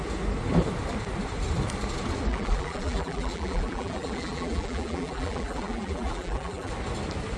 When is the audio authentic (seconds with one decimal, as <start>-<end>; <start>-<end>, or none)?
0.0-2.3; 6.7-7.4